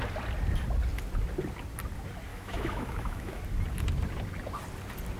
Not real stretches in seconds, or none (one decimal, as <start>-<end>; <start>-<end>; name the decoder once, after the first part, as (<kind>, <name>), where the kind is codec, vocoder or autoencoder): 2.3-3.4 (autoencoder, DAC-VAE)